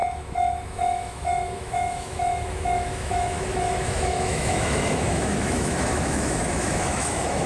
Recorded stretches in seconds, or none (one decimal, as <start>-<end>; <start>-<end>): none